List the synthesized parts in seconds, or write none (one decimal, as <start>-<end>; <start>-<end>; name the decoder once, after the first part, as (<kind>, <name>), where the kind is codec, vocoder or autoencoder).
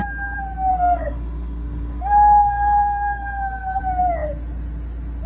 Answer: 0.7-3.8 (codec, SNAC)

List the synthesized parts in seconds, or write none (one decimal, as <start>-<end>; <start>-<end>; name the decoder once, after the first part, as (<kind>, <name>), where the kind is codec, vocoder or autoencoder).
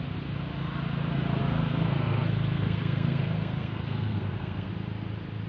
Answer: 1.4-4.7 (codec, SNAC)